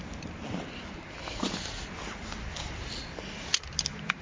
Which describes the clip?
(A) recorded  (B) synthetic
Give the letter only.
A